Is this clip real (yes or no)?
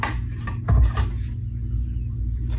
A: yes